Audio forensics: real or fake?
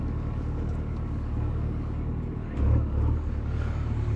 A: fake